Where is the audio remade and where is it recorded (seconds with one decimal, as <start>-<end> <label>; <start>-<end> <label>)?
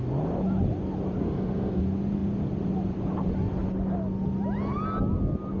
0.0-1.2 recorded; 1.2-1.8 remade; 1.8-5.6 recorded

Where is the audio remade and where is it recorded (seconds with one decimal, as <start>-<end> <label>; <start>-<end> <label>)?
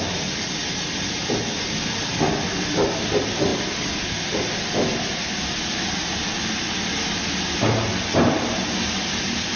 0.0-9.6 recorded